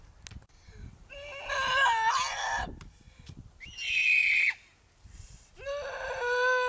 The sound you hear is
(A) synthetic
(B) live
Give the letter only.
B